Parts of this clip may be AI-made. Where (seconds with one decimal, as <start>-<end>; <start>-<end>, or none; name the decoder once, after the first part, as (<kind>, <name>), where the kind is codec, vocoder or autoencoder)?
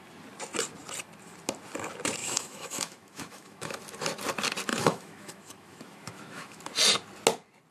2.2-3.8 (autoencoder, DAC-VAE); 4.7-6.6